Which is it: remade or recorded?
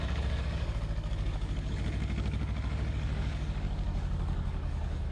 remade